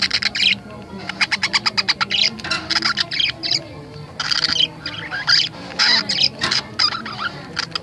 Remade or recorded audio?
recorded